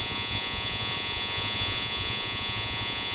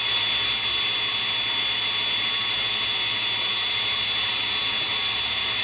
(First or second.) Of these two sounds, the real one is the second